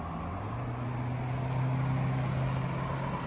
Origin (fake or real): real